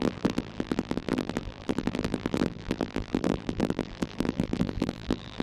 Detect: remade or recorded remade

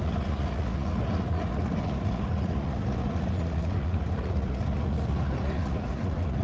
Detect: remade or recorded remade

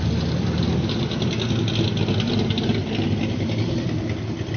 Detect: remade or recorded recorded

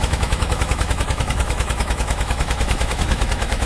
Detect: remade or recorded remade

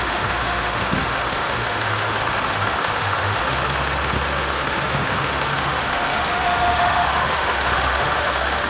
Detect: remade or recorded remade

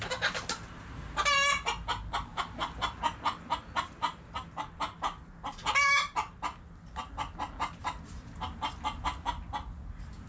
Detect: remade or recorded recorded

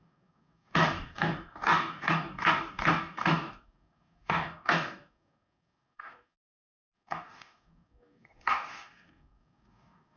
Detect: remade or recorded remade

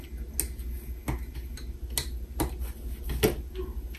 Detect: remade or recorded recorded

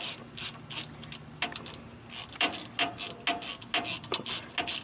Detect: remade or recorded recorded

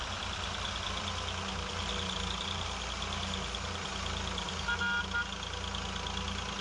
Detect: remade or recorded recorded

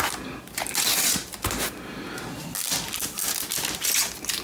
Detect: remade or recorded recorded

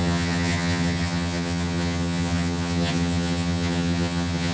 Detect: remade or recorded remade